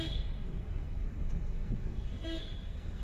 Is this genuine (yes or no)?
no